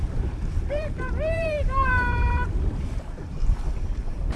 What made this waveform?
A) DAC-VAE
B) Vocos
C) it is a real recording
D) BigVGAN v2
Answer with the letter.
D